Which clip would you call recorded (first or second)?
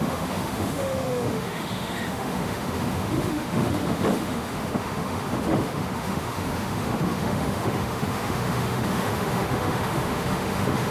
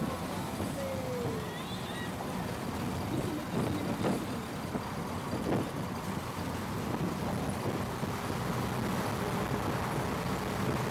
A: second